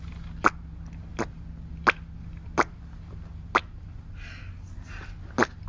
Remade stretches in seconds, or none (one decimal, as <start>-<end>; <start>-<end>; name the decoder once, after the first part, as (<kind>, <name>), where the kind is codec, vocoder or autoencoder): none